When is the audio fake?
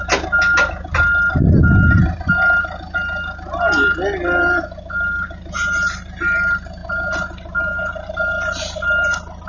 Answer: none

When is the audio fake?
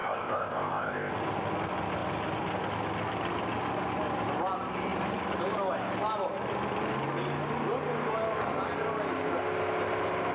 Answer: 0.0-1.1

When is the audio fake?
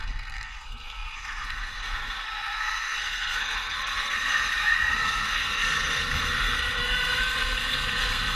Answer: 0.0-8.4